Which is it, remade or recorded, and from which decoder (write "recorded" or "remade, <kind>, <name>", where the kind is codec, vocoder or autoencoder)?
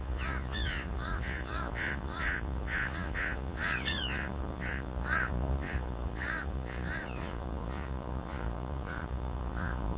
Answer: remade, vocoder, Vocos